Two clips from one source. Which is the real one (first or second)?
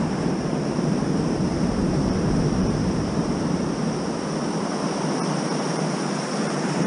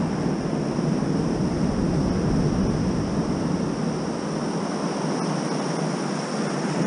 second